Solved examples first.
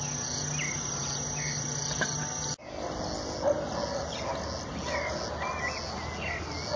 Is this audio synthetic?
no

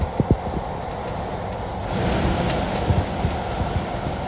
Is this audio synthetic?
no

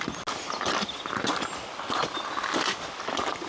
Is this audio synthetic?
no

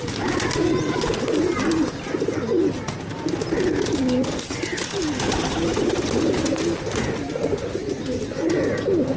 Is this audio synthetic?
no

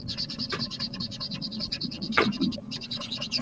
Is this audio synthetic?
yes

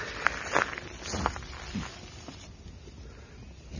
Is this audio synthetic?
no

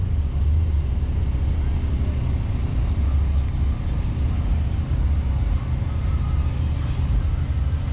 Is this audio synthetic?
no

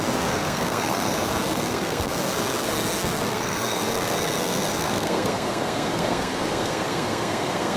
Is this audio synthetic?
yes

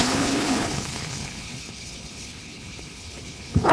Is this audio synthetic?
yes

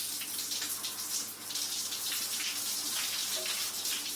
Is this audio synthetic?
no